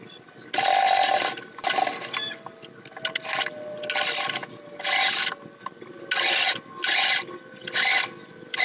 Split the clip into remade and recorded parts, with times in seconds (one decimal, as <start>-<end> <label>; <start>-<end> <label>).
0.0-8.6 recorded